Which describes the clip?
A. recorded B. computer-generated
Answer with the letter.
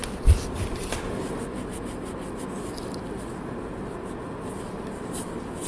A